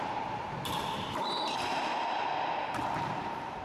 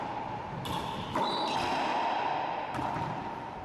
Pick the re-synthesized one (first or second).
first